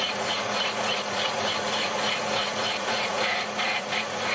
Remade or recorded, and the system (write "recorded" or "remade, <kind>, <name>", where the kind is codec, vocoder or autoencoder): remade, vocoder, Vocos